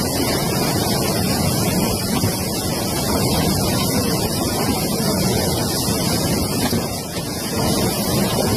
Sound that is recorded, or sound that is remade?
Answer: remade